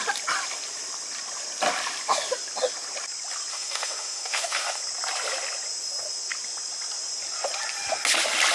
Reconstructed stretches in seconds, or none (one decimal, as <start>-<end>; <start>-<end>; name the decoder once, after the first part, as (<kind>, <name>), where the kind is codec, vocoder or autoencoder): 3.5-4.8 (autoencoder, DAC-VAE)